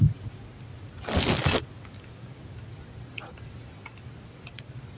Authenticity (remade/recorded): recorded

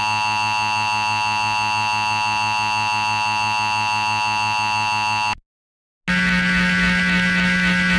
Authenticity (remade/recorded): recorded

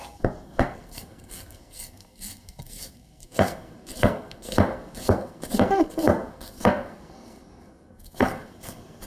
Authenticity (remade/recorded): remade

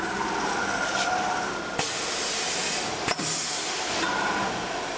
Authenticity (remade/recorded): recorded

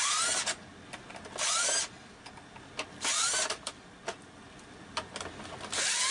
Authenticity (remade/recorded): recorded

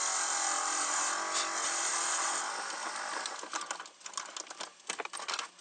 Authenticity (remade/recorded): recorded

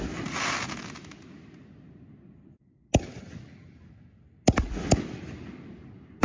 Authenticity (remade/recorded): recorded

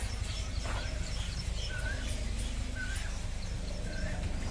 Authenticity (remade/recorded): recorded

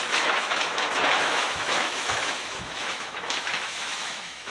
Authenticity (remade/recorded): remade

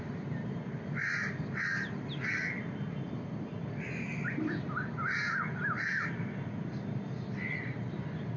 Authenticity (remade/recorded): recorded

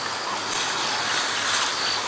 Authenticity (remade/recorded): recorded